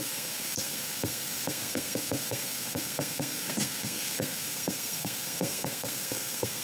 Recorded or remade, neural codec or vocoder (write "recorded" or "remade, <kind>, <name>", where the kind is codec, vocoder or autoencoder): remade, codec, SNAC